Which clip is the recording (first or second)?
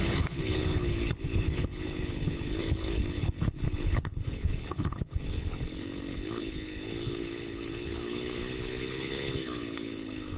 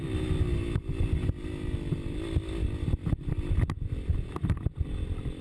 second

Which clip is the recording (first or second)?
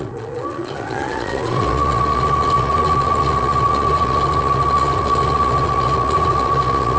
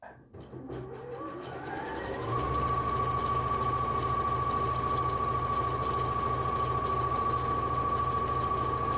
second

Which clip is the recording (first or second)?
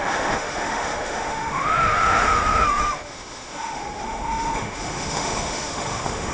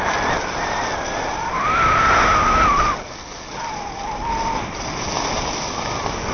second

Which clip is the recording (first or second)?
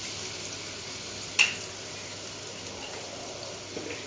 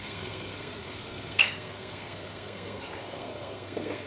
first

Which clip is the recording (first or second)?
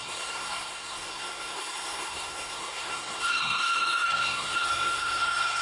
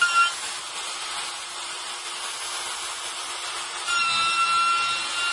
second